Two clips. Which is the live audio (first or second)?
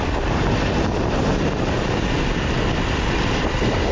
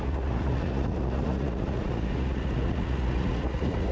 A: first